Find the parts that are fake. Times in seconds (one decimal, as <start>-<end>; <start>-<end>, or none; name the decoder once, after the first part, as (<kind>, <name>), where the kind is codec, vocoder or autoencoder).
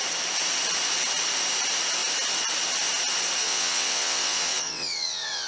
3.4-5.5 (vocoder, WaveNeXt)